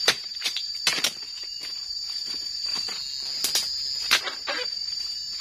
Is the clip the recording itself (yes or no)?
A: yes